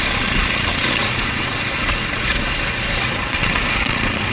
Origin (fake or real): fake